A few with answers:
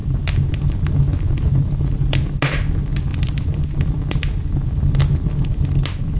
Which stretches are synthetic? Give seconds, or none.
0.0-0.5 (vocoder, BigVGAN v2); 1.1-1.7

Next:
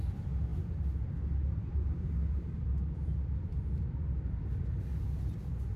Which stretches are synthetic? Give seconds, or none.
0.0-5.8 (vocoder, BigVGAN v2)

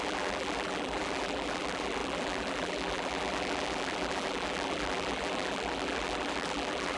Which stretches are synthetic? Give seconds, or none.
0.0-7.0 (vocoder, BigVGAN v2)

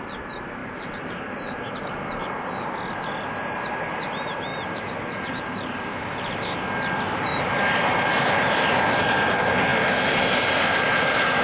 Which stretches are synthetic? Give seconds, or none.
0.6-1.7 (vocoder, BigVGAN v2); 4.5-5.4; 7.3-8.5

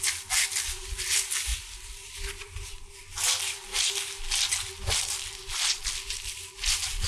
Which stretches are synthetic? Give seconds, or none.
0.0-1.5 (vocoder, BigVGAN v2); 2.1-3.7; 5.7-7.1

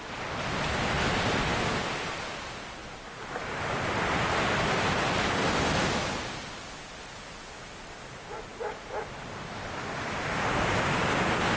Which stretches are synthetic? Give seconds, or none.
none

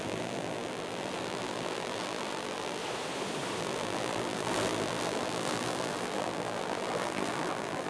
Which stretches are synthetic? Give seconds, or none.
0.0-2.8 (vocoder, BigVGAN v2); 3.6-7.9

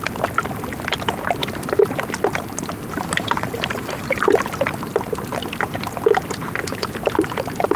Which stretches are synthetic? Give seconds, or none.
1.4-4.4 (vocoder, BigVGAN v2); 6.6-7.8